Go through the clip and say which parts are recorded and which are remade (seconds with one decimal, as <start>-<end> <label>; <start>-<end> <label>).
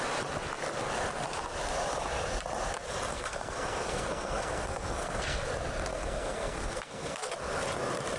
0.0-3.1 recorded; 3.1-5.5 remade; 5.5-5.9 recorded; 5.9-7.3 remade; 7.3-8.2 recorded